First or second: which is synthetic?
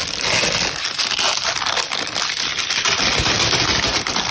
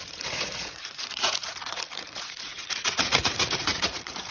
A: second